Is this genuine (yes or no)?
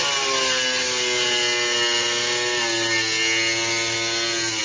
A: yes